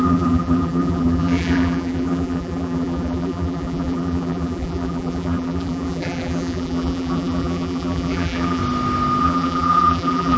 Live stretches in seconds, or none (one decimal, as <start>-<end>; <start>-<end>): 8.6-9.2